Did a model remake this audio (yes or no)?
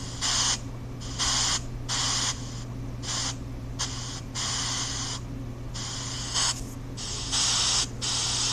no